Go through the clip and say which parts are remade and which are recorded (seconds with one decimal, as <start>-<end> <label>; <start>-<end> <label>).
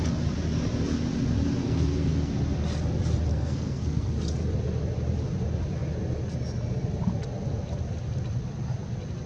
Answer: 0.0-1.6 recorded; 1.6-2.3 remade; 2.3-3.3 recorded; 3.3-4.1 remade; 4.1-9.3 recorded